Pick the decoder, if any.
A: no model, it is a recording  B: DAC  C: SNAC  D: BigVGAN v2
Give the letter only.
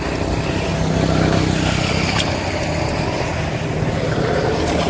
A